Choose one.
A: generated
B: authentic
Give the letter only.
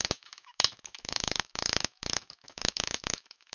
A